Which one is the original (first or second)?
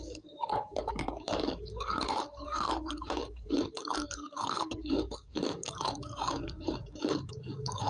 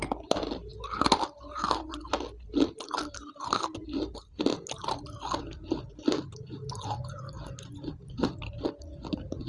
second